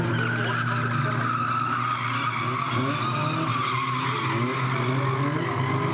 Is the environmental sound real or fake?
real